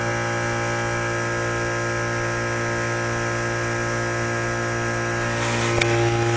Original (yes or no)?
yes